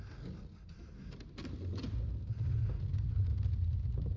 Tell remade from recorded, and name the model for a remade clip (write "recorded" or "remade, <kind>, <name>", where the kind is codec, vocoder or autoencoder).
recorded